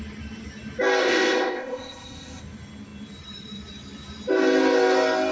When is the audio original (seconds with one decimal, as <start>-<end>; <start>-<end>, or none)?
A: 0.0-1.0; 2.4-5.3